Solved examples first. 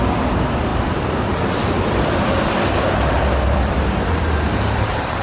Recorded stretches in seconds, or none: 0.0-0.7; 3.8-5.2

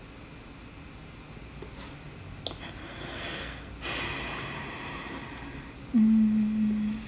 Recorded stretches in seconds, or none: 0.0-2.8; 3.7-7.1